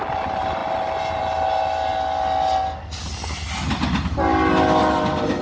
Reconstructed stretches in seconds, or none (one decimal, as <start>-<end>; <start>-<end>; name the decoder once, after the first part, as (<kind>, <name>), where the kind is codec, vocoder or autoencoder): none